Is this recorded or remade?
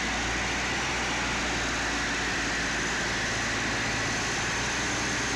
recorded